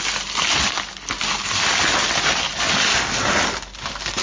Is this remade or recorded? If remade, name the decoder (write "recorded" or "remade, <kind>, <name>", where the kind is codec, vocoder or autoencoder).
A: recorded